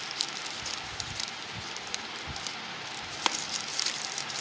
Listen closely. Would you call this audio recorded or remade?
recorded